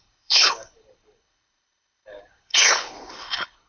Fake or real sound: fake